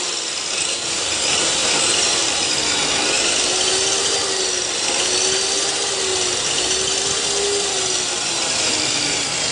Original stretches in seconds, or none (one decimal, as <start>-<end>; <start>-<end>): 0.0-9.5